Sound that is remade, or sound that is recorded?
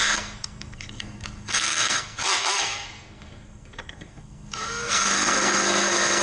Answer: remade